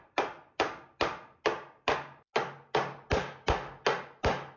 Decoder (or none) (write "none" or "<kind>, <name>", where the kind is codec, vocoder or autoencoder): none